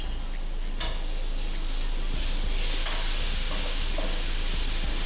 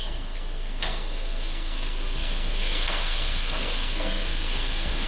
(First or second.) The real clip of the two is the first